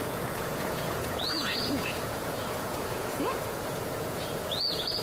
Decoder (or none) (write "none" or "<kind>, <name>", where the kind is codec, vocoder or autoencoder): vocoder, Vocos